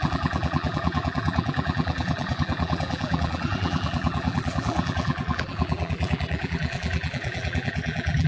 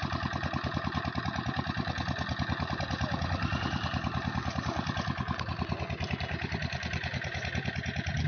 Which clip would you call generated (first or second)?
first